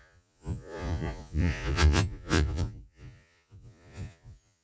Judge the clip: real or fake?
fake